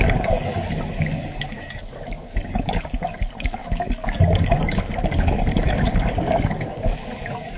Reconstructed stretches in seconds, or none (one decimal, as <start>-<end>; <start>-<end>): 0.0-7.6